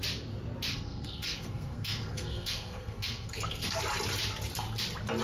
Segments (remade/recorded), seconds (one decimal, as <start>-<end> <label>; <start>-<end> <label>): 0.0-0.7 recorded; 0.7-3.8 remade; 3.8-5.2 recorded